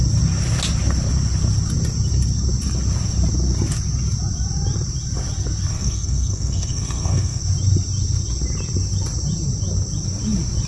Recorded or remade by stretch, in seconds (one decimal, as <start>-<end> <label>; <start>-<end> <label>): 0.0-5.7 recorded; 5.7-7.4 remade; 7.4-10.7 recorded